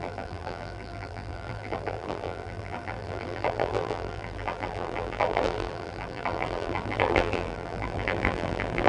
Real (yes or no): no